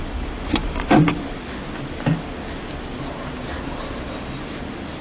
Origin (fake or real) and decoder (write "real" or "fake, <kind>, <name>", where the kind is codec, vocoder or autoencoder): real